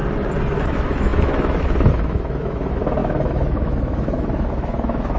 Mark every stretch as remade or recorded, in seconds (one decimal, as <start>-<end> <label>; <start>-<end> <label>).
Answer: 0.0-0.6 recorded; 0.6-5.2 remade